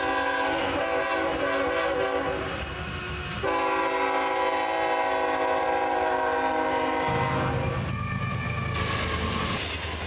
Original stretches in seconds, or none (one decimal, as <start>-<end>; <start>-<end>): 0.0-10.1